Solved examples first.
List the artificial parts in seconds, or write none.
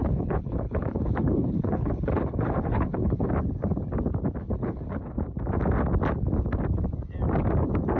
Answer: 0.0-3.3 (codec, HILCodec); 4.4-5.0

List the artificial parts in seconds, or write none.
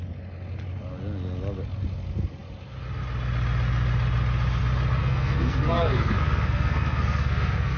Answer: 5.0-7.8 (codec, SNAC)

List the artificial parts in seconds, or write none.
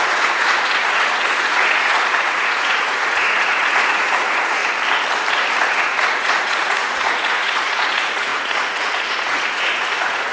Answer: 0.0-4.6 (vocoder, Vocos); 5.3-10.3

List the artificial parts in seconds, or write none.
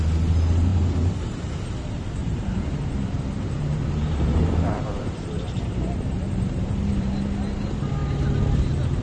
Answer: 0.7-1.5 (vocoder, BigVGAN v2); 2.2-7.1